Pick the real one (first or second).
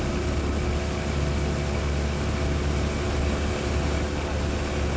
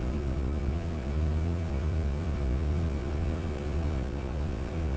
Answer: first